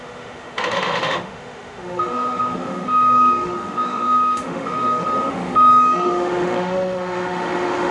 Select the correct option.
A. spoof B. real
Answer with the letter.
A